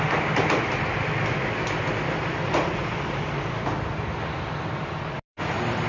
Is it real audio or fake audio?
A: fake